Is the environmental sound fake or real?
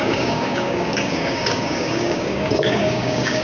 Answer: fake